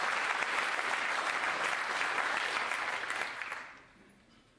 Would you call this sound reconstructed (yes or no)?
no